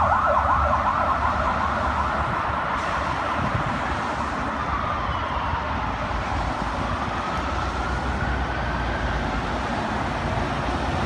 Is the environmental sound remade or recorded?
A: recorded